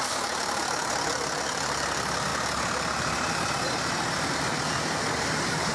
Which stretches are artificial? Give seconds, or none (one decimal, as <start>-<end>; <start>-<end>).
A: 0.0-5.7